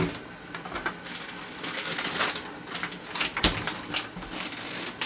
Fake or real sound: real